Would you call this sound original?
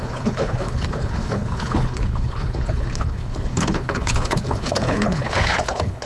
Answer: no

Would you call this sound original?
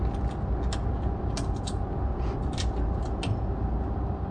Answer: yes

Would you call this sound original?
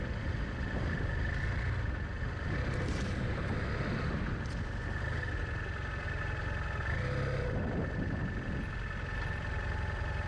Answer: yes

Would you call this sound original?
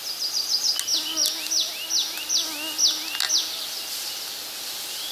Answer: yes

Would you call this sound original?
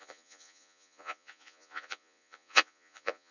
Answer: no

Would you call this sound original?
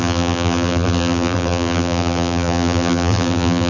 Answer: no